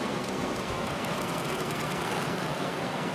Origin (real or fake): fake